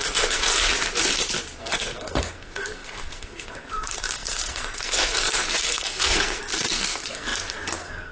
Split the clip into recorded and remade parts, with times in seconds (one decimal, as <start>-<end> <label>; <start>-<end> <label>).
0.0-0.5 remade; 0.5-1.6 recorded; 1.6-8.1 remade